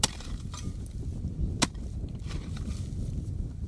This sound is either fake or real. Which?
real